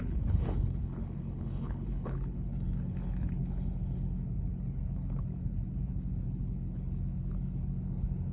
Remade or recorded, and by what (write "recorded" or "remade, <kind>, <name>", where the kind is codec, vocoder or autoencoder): remade, codec, HILCodec